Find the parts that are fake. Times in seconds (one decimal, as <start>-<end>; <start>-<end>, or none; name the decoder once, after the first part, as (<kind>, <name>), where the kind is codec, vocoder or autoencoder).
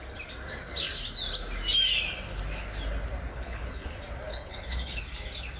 3.3-3.9 (codec, HILCodec); 4.3-5.0